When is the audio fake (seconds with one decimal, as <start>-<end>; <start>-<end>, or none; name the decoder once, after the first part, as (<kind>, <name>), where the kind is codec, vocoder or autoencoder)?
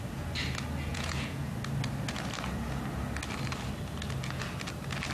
0.9-1.5 (vocoder, Vocos)